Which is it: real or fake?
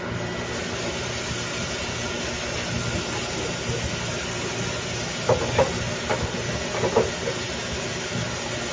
real